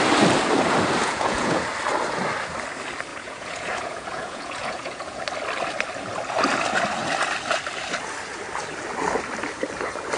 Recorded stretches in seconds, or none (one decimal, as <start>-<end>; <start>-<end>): 0.0-1.0; 1.6-3.1; 5.2-10.2